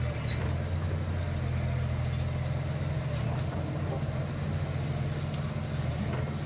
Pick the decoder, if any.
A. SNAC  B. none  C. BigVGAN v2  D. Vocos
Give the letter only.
B